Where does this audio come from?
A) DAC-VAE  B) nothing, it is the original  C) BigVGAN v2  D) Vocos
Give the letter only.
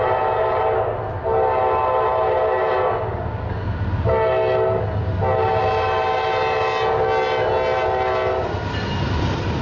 B